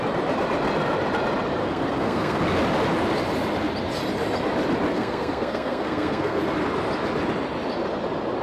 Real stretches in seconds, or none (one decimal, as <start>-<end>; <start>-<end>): 0.0-1.6; 2.4-4.9; 6.4-8.4